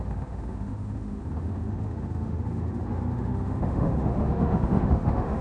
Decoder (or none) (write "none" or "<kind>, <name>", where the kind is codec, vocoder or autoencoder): autoencoder, DAC-VAE